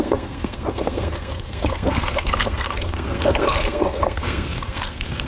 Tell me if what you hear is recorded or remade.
remade